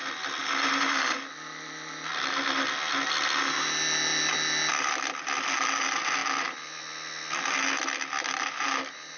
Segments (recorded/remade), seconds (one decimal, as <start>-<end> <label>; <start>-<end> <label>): 0.0-9.2 recorded

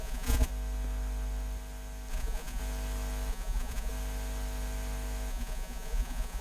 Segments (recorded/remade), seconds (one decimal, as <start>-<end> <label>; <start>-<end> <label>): 0.0-0.5 remade; 0.5-2.1 recorded; 2.1-2.6 remade; 2.6-3.3 recorded; 3.3-3.9 remade; 3.9-5.3 recorded; 5.3-6.4 remade

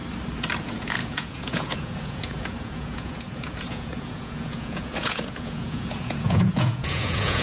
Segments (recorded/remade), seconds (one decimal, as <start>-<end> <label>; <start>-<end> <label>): 0.0-0.6 recorded; 0.6-7.4 remade

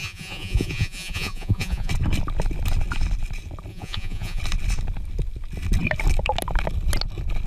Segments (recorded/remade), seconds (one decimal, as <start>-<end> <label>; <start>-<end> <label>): 0.0-1.9 remade; 1.9-3.7 recorded; 3.7-4.4 remade; 4.4-7.5 recorded

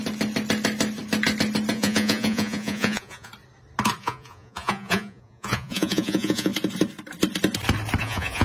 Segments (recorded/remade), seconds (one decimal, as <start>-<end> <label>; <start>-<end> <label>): 0.0-1.7 recorded; 1.7-3.3 remade; 3.3-4.0 recorded; 4.0-6.5 remade; 6.5-8.0 recorded; 8.0-8.4 remade

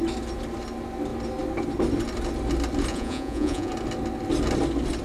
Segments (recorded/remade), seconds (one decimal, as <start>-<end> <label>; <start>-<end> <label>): 0.0-2.9 recorded; 2.9-3.7 remade; 3.7-5.0 recorded